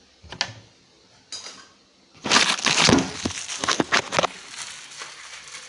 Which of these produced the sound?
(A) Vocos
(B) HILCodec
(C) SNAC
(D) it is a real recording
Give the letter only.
D